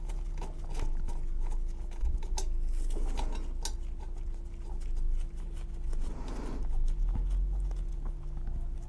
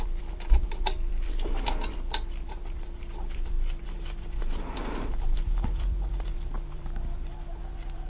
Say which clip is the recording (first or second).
first